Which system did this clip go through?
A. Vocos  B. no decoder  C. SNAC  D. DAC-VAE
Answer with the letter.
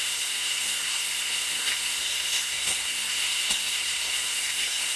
C